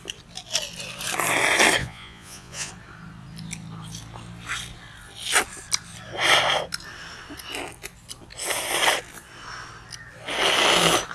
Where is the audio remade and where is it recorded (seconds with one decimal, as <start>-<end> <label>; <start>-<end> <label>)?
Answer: 0.0-1.8 recorded; 1.8-2.7 remade; 2.7-11.1 recorded